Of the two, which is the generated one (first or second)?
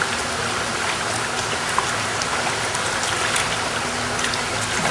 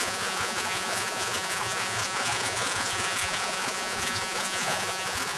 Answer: second